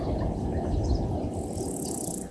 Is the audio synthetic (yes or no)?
no